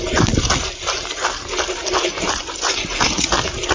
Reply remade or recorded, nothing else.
recorded